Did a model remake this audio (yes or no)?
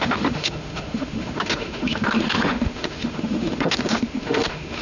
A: yes